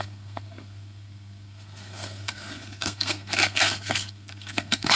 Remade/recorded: remade